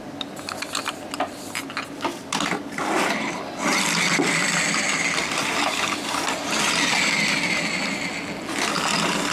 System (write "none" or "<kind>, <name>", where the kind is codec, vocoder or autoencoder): none